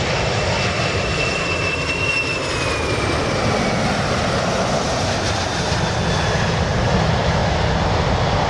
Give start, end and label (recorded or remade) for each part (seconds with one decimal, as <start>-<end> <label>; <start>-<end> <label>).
0.0-8.5 recorded